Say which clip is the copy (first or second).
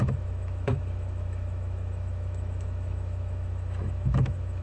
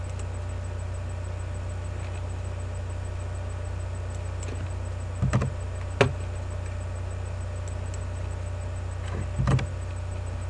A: first